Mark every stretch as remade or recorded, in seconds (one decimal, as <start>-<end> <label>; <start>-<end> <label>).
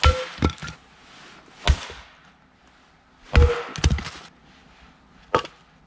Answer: 0.0-5.9 recorded